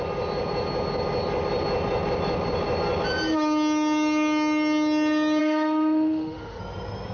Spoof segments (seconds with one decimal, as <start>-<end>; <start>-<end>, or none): 5.4-6.6